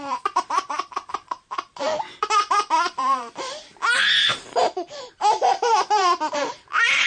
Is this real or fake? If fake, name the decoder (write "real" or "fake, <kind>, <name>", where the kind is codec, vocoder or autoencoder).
fake, vocoder, BigVGAN v2